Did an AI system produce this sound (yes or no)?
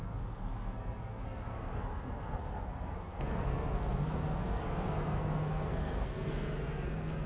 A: yes